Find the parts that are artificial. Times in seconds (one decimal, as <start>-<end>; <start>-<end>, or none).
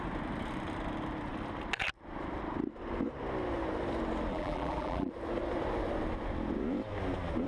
4.3-5.1